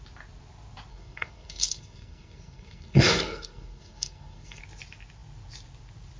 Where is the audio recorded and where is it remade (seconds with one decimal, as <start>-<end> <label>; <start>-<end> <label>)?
0.0-0.9 recorded; 0.9-4.6 remade; 4.6-6.2 recorded